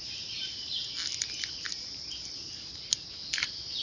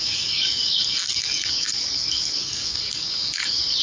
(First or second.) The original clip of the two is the first